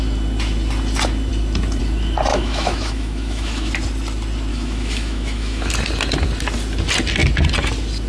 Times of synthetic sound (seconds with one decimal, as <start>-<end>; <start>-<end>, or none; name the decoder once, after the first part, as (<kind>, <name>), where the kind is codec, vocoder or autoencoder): 2.3-3.7 (autoencoder, DAC-VAE); 4.5-5.7